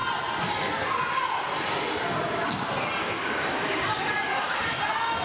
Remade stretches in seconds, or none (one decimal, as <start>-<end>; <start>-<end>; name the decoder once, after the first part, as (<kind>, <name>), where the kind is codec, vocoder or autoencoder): 3.0-4.8 (codec, DAC)